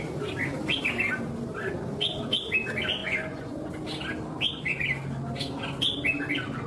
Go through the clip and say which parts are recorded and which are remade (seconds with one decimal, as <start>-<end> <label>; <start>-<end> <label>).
0.0-3.0 recorded; 3.0-3.7 remade; 3.7-6.7 recorded